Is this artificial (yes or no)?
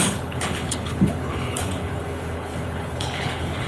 yes